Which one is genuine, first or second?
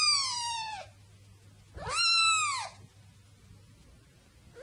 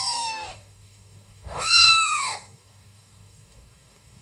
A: first